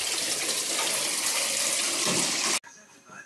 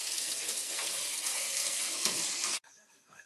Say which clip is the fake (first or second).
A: second